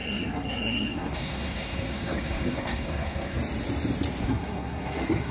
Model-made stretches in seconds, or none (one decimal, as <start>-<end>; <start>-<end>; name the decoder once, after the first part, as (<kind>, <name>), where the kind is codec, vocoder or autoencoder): 0.0-3.4 (codec, SNAC); 4.2-5.3